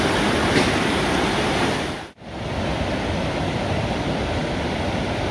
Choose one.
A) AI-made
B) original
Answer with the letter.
B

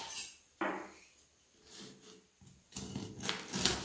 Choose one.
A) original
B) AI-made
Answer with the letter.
A